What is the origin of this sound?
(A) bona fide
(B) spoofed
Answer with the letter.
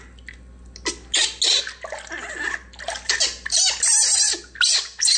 A